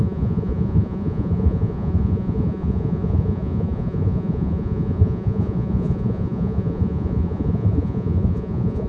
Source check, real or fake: fake